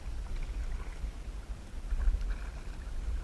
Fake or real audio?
real